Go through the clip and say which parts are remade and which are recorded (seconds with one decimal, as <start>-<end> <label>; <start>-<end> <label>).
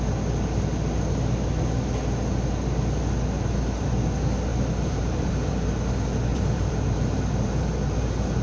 0.0-4.5 recorded; 4.5-5.3 remade; 5.3-6.3 recorded; 6.3-7.6 remade; 7.6-8.4 recorded